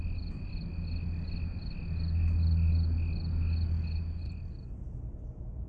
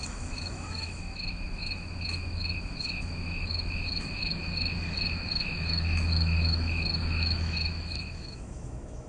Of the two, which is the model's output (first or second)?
second